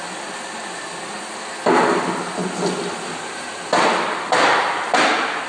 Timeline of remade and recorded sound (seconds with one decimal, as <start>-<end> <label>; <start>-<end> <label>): 0.0-5.5 recorded